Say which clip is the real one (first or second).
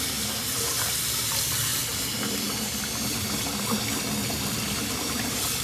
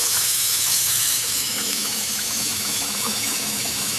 first